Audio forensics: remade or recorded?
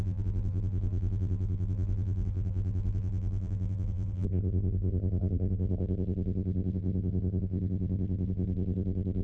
remade